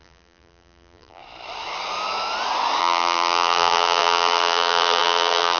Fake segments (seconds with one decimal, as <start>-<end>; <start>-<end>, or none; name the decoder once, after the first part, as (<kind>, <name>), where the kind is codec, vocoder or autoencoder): 0.0-1.2 (vocoder, BigVGAN v2); 2.8-5.6